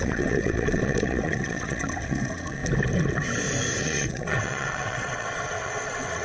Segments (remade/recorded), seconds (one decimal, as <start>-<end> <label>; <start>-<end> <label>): 0.0-2.6 remade; 2.6-3.8 recorded; 3.8-6.2 remade